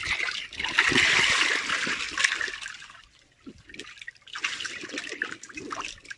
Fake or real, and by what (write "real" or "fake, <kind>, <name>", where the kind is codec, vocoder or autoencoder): real